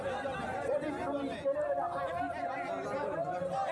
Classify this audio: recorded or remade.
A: recorded